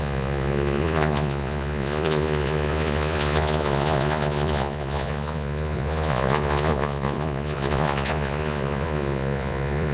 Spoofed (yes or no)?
yes